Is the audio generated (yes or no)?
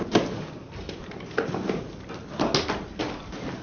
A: no